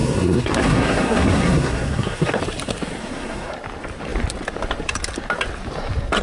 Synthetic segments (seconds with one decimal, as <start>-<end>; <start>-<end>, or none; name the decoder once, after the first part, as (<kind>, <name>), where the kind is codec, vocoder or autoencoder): 0.0-2.4 (codec, SNAC); 3.0-3.5